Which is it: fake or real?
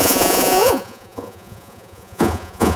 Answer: fake